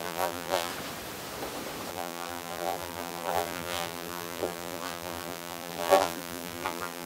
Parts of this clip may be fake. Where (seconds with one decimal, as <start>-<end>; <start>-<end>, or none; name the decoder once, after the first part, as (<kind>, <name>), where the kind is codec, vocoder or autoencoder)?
0.0-0.7 (vocoder, BigVGAN v2); 1.9-7.1